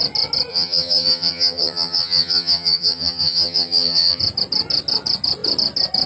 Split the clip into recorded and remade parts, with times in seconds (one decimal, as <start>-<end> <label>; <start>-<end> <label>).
0.0-0.5 recorded; 0.5-4.2 remade; 4.2-6.1 recorded